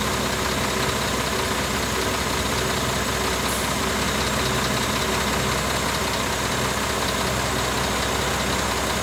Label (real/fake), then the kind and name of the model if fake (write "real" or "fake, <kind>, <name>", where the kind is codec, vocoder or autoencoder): real